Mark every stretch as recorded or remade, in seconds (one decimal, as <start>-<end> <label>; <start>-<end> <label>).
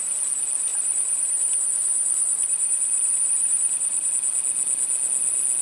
0.0-0.7 recorded; 0.7-4.1 remade; 4.1-5.6 recorded